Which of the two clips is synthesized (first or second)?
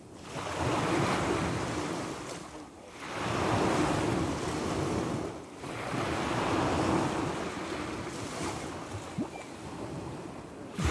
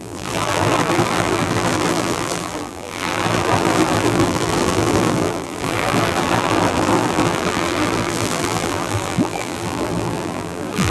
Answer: second